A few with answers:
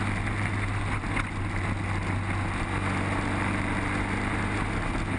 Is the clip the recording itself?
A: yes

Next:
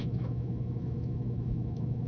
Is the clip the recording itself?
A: no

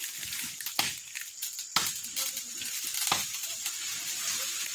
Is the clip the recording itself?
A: yes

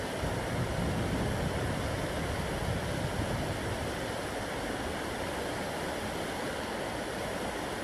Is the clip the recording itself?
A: yes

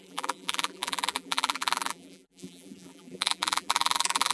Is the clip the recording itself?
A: no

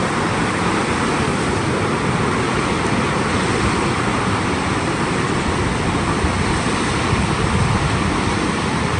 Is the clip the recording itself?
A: yes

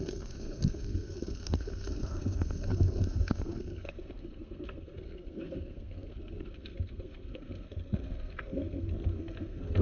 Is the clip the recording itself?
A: no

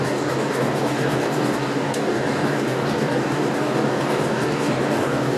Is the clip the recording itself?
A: no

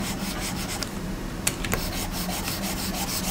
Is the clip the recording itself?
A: yes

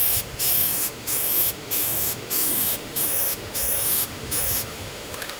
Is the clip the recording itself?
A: no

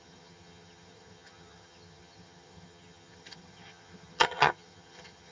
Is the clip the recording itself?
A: no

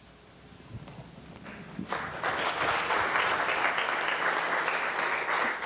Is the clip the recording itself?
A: yes